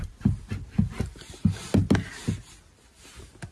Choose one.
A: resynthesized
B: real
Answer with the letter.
B